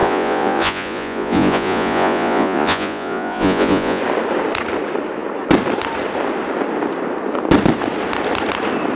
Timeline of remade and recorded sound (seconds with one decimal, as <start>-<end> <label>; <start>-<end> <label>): 0.0-4.0 remade; 4.0-9.0 recorded